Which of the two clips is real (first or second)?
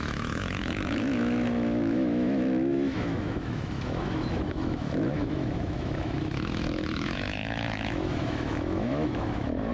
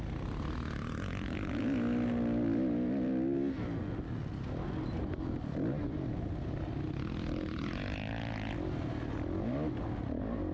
second